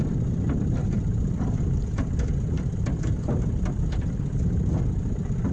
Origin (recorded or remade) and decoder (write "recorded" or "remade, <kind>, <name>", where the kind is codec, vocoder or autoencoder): recorded